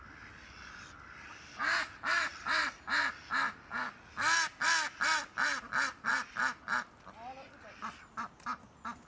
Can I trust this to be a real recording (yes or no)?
yes